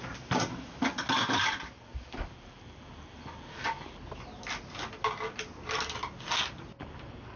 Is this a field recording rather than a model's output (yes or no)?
yes